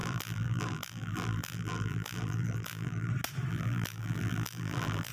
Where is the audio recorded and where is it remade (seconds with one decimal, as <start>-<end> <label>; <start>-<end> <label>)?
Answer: 0.0-3.1 remade; 3.1-3.5 recorded; 3.5-5.1 remade